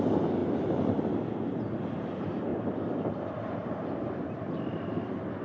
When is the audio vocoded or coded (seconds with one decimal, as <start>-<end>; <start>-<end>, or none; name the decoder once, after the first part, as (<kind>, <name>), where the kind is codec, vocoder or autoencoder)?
0.4-1.0 (vocoder, BigVGAN v2); 2.5-3.2; 3.6-4.2